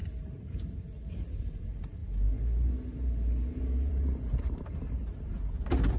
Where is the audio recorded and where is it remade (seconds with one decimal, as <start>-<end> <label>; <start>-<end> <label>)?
0.0-2.0 remade; 2.0-3.5 recorded; 3.5-6.0 remade

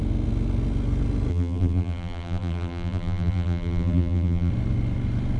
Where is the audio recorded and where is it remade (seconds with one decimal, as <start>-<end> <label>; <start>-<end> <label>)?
0.0-1.3 recorded; 1.3-4.5 remade; 4.5-5.4 recorded

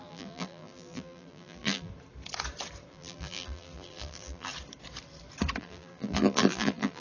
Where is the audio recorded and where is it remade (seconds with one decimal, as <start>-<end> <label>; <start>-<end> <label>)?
0.0-1.9 remade; 1.9-2.9 recorded; 2.9-4.5 remade; 4.5-5.6 recorded; 5.6-7.0 remade

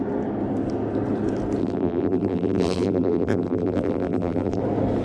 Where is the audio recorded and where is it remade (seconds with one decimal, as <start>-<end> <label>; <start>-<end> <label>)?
0.0-1.6 recorded; 1.6-4.6 remade; 4.6-5.0 recorded

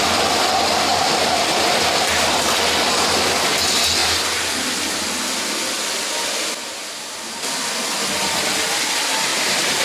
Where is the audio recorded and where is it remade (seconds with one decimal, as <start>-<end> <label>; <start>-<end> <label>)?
0.0-0.9 recorded; 0.9-1.4 remade; 1.4-9.3 recorded; 9.3-9.8 remade

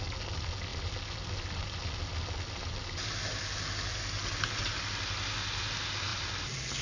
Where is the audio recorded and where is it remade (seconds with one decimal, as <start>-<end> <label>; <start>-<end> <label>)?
0.0-6.8 recorded